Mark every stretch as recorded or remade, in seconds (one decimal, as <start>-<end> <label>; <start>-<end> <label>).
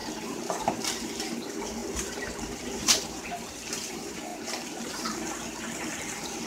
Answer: 0.0-6.5 remade